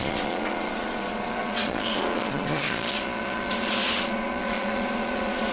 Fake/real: fake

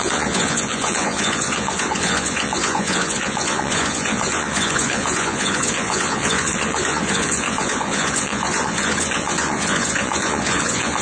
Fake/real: fake